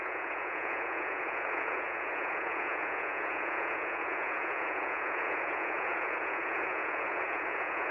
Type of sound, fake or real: fake